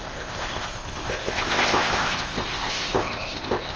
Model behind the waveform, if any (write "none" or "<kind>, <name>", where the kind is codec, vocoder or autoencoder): codec, ZipCodec